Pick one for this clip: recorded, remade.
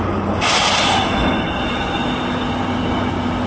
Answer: recorded